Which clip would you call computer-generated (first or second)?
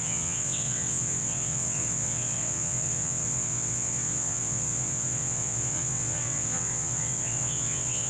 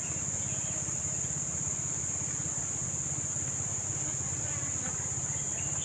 first